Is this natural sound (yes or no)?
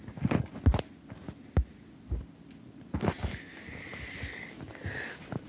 yes